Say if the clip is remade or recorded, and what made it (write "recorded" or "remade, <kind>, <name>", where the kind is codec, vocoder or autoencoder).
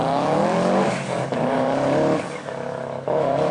remade, codec, DAC